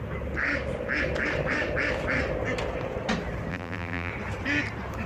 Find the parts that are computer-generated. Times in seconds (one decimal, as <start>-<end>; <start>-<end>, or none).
3.5-4.1